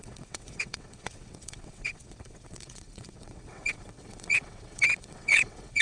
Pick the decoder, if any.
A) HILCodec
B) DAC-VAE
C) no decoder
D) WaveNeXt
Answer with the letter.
D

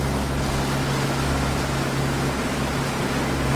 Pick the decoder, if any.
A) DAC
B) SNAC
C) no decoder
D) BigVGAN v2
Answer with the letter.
C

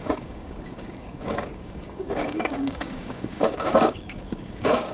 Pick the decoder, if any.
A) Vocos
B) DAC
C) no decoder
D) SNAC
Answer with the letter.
B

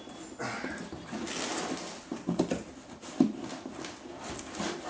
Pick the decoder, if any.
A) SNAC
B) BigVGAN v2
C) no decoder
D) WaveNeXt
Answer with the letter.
C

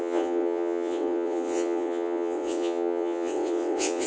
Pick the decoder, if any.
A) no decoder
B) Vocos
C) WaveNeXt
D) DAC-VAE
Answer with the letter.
C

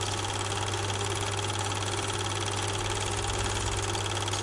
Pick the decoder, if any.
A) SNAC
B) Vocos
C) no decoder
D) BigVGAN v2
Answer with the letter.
C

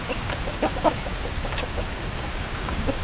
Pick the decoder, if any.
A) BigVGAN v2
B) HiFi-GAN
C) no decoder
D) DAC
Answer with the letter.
D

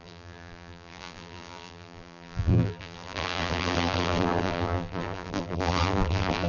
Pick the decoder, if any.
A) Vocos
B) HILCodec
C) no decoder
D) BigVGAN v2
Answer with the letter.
D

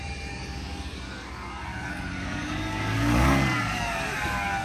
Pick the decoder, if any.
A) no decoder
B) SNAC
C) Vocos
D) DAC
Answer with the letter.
D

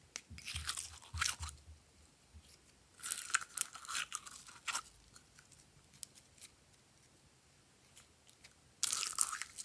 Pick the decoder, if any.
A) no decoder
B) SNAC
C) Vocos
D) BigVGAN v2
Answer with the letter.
A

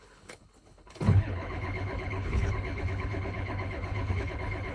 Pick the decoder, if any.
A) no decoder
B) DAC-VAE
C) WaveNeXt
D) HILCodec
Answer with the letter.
D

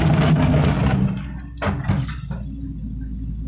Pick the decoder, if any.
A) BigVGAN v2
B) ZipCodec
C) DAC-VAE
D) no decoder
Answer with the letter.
D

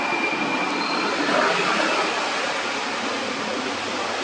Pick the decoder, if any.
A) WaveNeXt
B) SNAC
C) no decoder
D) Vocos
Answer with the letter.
C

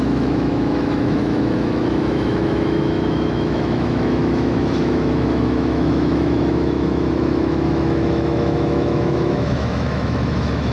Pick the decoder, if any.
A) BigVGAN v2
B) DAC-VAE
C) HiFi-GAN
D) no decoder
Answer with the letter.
B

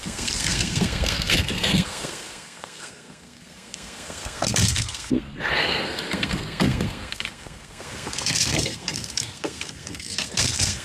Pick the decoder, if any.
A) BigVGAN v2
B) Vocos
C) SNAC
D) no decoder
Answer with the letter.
C